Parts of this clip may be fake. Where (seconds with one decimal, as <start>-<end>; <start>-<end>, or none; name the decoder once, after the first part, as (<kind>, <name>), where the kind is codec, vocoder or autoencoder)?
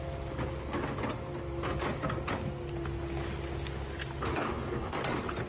4.3-4.9 (codec, DAC)